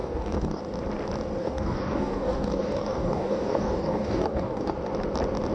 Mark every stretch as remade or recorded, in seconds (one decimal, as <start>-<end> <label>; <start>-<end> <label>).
0.0-0.6 remade; 0.6-1.4 recorded; 1.4-4.7 remade; 4.7-5.5 recorded